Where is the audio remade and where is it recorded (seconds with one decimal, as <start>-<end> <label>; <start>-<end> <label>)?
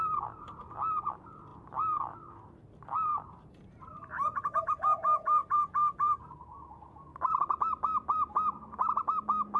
0.0-1.5 recorded; 1.5-4.7 remade; 4.7-5.4 recorded; 5.4-8.4 remade; 8.4-9.6 recorded